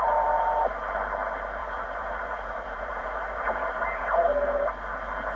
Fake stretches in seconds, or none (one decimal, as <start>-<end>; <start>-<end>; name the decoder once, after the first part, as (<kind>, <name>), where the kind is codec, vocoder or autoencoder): 1.6-4.6 (vocoder, BigVGAN v2)